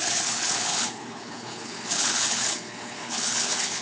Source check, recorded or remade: remade